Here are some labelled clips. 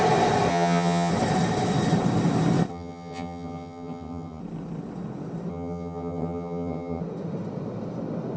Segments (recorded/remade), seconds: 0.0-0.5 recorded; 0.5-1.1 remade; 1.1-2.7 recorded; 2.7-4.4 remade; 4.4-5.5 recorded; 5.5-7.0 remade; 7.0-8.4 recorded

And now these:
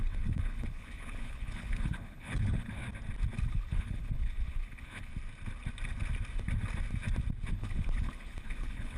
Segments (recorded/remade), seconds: 0.0-2.8 remade; 2.8-3.5 recorded; 3.5-5.1 remade; 5.1-7.5 recorded; 7.5-9.0 remade

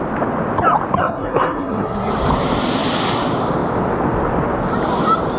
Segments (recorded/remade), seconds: 0.0-1.0 recorded; 1.0-2.1 remade; 2.1-5.4 recorded

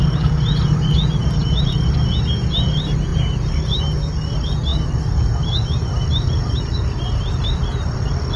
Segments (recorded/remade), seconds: 0.0-1.2 recorded; 1.2-1.7 remade; 1.7-3.1 recorded; 3.1-3.8 remade; 3.8-4.7 recorded; 4.7-8.4 remade

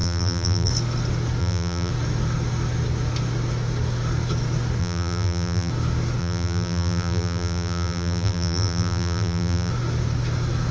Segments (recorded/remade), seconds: 0.0-0.7 remade; 0.7-1.4 recorded; 1.4-1.9 remade; 1.9-4.8 recorded; 4.8-5.7 remade; 5.7-6.2 recorded; 6.2-9.7 remade; 9.7-10.7 recorded

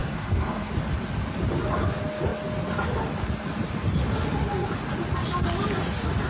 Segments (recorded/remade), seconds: 0.0-0.7 remade; 0.7-6.3 recorded